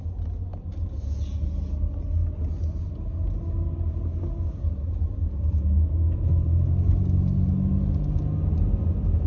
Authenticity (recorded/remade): recorded